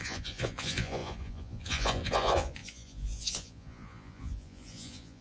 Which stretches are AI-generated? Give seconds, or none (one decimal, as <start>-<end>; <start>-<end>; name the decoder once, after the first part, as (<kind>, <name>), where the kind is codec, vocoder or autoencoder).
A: 0.0-5.2 (vocoder, Vocos)